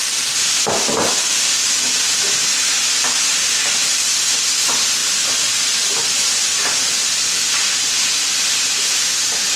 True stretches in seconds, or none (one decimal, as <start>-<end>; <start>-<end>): 0.0-9.6